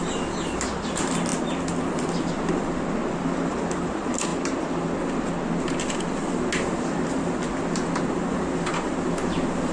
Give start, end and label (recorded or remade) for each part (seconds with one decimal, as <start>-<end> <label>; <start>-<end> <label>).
0.0-9.7 recorded